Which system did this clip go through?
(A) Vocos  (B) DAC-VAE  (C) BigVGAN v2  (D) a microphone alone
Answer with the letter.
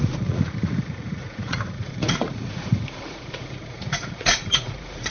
A